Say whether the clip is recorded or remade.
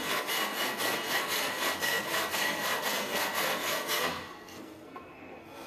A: remade